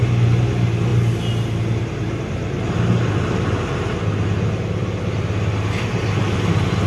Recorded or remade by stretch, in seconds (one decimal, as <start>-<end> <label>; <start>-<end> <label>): 0.0-6.9 recorded